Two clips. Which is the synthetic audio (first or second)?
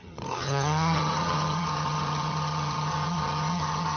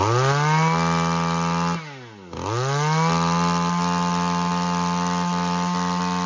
first